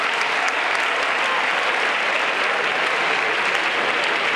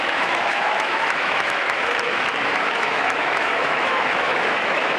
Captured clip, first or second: first